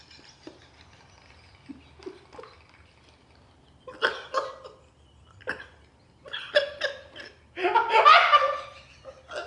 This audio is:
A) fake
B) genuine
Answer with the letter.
B